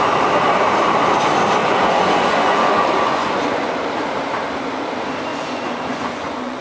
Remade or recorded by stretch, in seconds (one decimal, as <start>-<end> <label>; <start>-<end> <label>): 0.0-1.6 recorded; 1.6-3.7 remade; 3.7-5.3 recorded; 5.3-6.6 remade